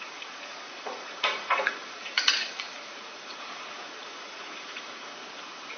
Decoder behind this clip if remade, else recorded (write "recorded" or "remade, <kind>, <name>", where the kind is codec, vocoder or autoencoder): remade, vocoder, Vocos